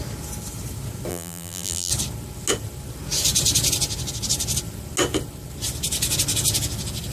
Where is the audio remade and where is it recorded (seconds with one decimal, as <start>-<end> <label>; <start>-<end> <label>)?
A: 0.0-1.1 recorded; 1.1-1.9 remade; 1.9-7.1 recorded